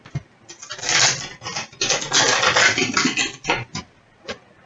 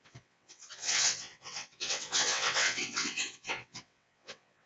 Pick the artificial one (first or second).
second